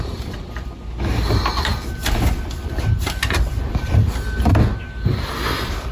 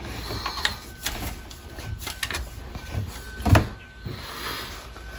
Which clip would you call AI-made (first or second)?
first